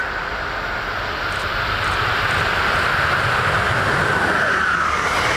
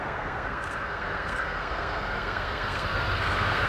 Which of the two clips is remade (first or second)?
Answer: second